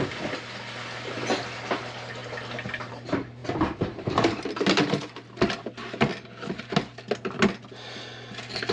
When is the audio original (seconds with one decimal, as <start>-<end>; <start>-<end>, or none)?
0.0-8.7